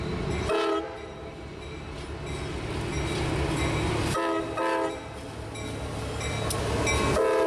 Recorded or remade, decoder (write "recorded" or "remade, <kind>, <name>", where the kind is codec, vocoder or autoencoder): recorded